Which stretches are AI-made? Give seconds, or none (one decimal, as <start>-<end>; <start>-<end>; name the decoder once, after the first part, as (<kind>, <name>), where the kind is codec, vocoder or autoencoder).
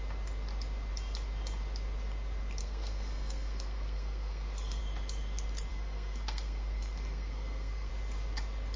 2.6-4.8 (codec, SNAC); 5.7-7.9